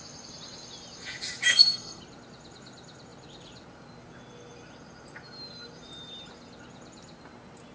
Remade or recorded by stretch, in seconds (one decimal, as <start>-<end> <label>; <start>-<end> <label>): 0.0-1.5 recorded; 1.5-2.0 remade; 2.0-7.7 recorded